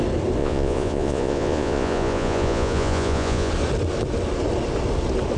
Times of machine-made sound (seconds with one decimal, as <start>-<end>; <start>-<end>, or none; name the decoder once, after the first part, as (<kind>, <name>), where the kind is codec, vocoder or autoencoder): 0.4-3.5 (vocoder, Vocos)